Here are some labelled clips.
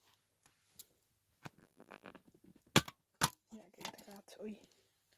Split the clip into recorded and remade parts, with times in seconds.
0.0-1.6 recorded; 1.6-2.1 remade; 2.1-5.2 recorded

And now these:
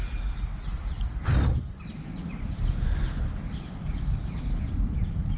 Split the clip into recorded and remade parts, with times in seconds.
0.0-5.4 recorded

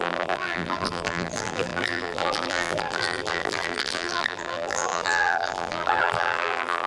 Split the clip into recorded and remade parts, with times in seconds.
0.0-6.9 remade

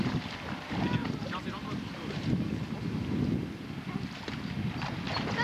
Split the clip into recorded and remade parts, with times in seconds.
0.0-1.0 recorded; 1.0-2.6 remade; 2.6-5.4 recorded